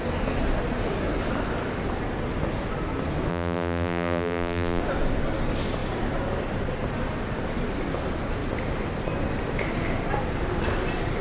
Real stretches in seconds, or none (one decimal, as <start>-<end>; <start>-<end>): 0.0-3.3; 4.8-11.2